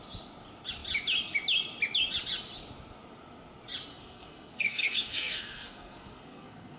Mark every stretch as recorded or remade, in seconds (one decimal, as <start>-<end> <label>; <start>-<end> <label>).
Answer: 0.0-3.9 recorded; 3.9-6.8 remade